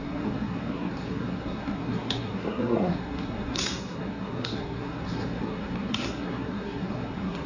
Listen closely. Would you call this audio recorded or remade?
remade